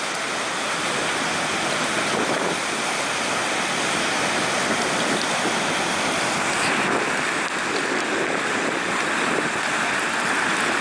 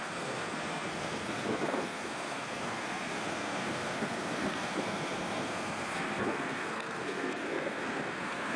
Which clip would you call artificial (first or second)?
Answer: second